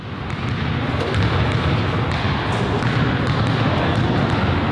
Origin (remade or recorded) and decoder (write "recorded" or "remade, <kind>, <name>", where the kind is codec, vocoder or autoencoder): recorded